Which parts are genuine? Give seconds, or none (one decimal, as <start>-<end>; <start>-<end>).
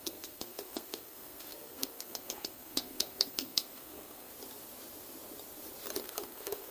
4.3-6.0